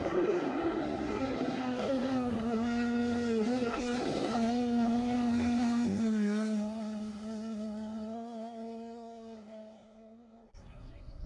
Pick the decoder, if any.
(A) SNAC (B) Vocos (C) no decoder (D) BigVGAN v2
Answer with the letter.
A